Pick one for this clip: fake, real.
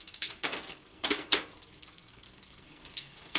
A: fake